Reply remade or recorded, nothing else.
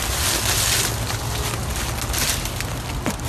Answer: recorded